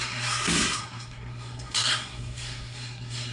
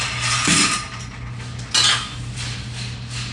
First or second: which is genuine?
second